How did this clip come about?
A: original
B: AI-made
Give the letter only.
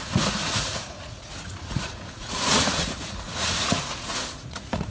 B